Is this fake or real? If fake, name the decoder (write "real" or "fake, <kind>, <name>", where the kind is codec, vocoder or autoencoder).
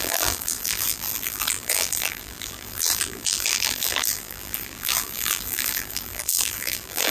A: fake, vocoder, BigVGAN v2